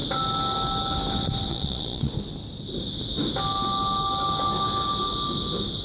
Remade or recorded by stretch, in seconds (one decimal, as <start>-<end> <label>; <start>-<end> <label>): 0.0-1.5 recorded; 1.5-2.1 remade; 2.1-5.8 recorded

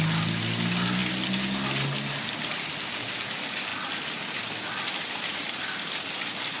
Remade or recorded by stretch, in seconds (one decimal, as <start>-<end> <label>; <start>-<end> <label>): 0.0-6.6 recorded